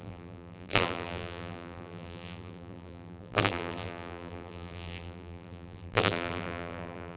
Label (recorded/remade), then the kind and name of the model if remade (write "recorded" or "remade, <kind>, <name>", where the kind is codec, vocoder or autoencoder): remade, vocoder, BigVGAN v2